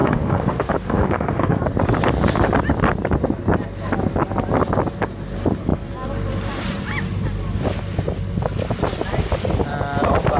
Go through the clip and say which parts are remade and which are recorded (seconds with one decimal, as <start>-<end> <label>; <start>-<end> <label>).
0.0-1.6 remade; 1.6-10.4 recorded